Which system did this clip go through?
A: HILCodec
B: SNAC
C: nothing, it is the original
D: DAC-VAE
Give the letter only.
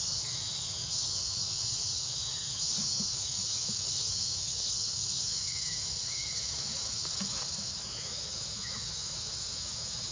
D